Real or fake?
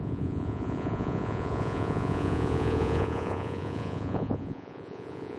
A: fake